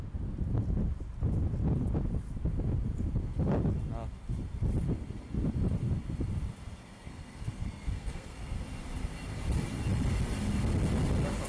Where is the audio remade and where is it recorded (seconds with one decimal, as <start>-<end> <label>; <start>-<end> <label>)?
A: 0.0-6.8 recorded; 6.8-8.6 remade; 8.6-11.5 recorded